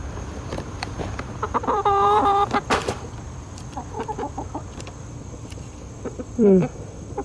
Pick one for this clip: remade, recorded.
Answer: remade